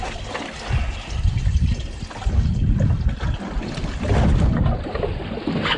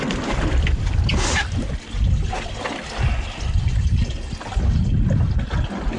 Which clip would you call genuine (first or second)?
second